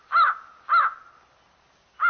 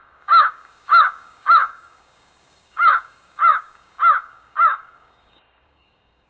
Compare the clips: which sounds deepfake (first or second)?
second